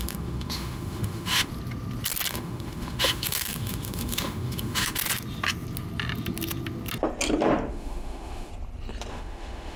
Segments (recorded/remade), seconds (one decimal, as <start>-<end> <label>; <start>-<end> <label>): 0.0-1.5 remade; 1.5-2.3 recorded; 2.3-5.0 remade; 5.0-7.7 recorded; 7.7-8.5 remade; 8.5-9.1 recorded; 9.1-9.8 remade